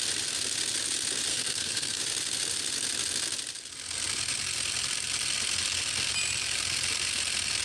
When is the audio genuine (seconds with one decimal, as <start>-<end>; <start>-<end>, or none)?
0.0-1.3; 2.0-7.6